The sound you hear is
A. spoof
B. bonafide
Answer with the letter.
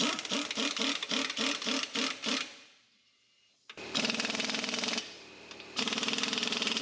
B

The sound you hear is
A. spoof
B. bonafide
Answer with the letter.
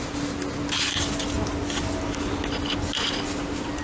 B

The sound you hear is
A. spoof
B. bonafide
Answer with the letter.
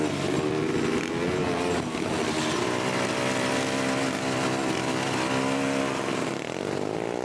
B